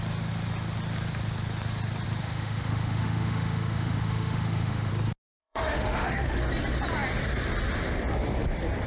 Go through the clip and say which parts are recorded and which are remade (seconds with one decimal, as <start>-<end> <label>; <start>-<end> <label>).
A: 0.0-2.2 recorded; 2.2-4.9 remade; 4.9-5.4 recorded; 5.4-6.4 remade; 6.4-8.9 recorded